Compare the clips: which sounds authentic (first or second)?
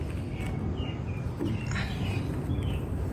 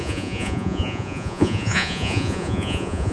first